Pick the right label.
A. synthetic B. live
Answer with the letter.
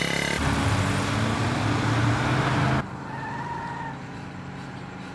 B